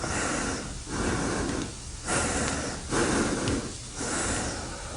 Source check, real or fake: real